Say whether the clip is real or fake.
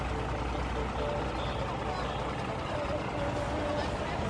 real